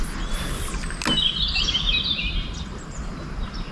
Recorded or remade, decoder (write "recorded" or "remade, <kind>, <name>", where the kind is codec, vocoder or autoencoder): recorded